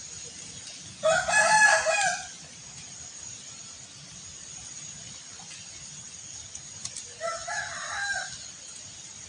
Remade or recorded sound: recorded